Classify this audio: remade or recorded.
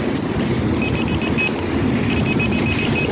recorded